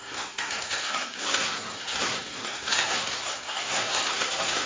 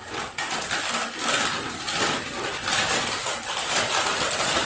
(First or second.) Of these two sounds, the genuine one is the second